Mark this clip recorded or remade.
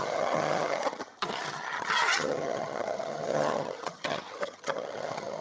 remade